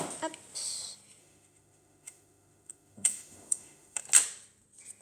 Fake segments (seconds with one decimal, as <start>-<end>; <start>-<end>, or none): 1.2-4.0